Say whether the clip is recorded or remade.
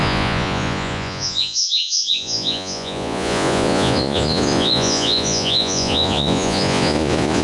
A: remade